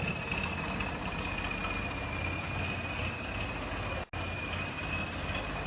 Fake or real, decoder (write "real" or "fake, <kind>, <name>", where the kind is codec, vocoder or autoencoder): real